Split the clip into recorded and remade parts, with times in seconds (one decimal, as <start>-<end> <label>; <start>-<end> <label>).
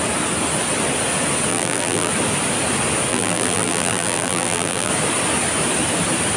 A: 0.0-1.5 recorded; 1.5-2.1 remade; 2.1-3.1 recorded; 3.1-4.9 remade; 4.9-6.4 recorded